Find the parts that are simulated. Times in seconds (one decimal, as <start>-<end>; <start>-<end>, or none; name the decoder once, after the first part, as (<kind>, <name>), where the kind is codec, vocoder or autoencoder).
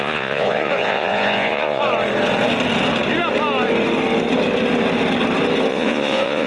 0.0-1.8 (vocoder, Vocos); 5.7-6.5